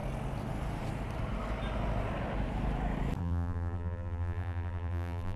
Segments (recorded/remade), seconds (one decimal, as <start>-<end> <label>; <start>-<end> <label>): 0.0-3.2 recorded; 3.2-5.4 remade